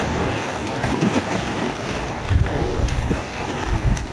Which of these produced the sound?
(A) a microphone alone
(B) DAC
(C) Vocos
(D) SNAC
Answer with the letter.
B